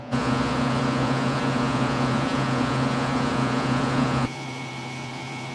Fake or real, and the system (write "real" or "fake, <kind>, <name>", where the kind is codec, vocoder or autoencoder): fake, vocoder, Vocos